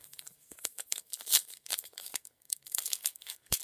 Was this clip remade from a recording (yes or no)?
yes